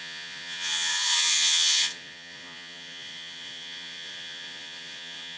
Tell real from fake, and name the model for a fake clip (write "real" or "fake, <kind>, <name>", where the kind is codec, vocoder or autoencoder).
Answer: fake, vocoder, Vocos